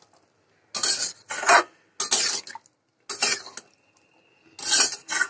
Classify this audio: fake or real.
real